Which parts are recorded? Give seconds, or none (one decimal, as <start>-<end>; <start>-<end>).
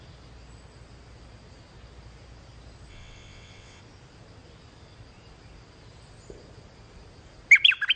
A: 0.0-2.9; 3.8-8.0